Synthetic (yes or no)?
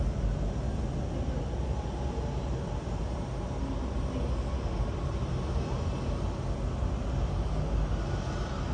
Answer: no